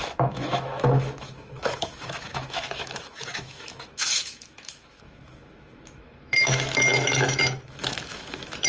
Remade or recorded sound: remade